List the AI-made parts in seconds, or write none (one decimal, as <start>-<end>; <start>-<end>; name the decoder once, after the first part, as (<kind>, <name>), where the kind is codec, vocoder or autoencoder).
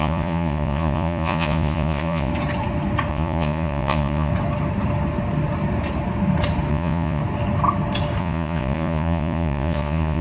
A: 0.0-2.3 (vocoder, Vocos); 3.1-4.3; 6.7-7.2; 8.2-10.2